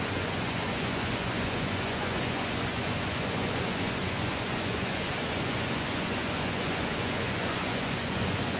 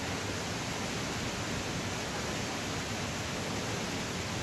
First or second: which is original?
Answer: second